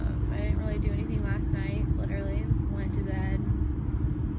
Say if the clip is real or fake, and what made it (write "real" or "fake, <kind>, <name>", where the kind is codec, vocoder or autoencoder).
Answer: real